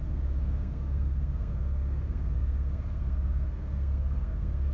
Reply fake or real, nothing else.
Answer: fake